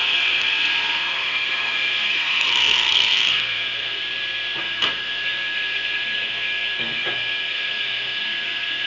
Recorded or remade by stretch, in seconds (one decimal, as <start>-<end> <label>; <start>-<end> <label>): 0.0-4.0 remade; 4.0-4.6 recorded; 4.6-8.9 remade